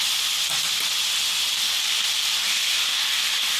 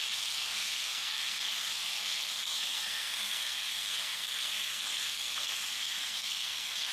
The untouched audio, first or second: first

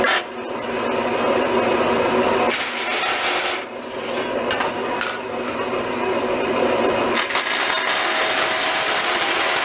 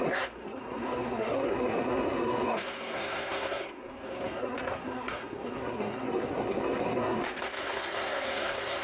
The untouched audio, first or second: first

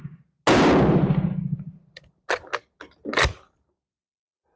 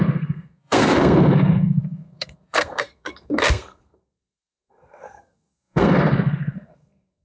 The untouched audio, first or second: first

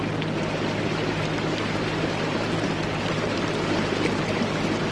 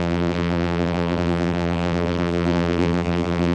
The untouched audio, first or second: first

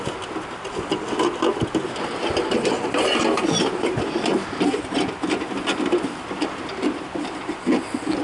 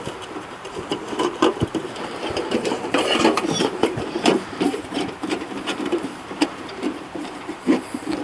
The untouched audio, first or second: first